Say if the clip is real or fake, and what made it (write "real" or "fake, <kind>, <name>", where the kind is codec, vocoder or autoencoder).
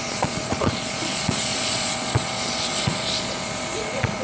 fake, vocoder, Vocos